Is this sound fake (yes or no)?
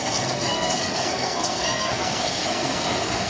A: yes